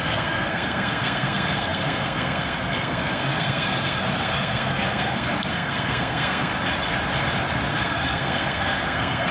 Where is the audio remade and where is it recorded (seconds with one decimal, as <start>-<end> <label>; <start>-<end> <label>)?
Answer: 0.0-6.5 remade; 6.5-7.7 recorded; 7.7-9.3 remade